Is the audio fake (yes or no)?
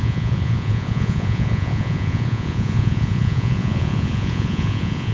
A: yes